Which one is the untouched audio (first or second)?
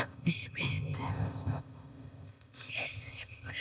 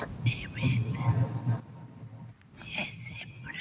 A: second